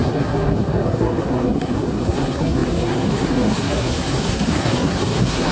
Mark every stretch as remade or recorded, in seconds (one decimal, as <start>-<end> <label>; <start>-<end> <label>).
0.0-5.5 remade